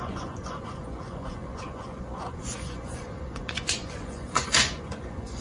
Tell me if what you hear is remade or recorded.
remade